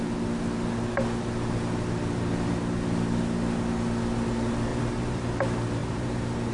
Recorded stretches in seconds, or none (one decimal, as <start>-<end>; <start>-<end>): 0.0-4.7; 5.3-5.8